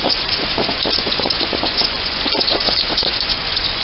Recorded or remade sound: remade